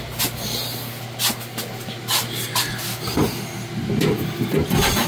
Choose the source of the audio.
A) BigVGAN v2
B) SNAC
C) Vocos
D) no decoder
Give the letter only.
D